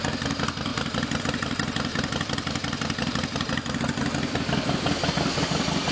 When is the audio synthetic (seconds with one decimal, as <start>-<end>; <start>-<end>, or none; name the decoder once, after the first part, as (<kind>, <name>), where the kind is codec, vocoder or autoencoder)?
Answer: 0.7-1.2 (vocoder, BigVGAN v2); 1.9-3.8